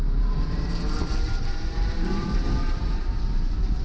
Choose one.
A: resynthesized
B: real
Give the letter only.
A